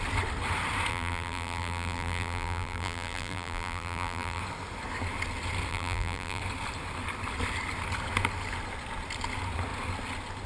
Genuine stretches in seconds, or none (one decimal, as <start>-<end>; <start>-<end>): 0.0-0.9; 4.4-5.7; 6.4-10.5

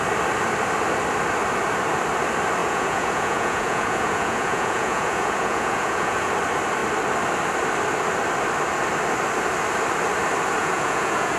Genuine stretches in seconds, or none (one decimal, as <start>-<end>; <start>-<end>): 0.0-2.6; 6.3-10.6